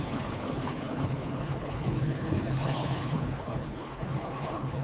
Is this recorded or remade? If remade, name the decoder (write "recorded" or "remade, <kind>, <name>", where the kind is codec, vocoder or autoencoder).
remade, codec, HILCodec